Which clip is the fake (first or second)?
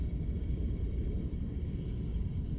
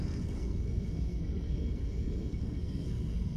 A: second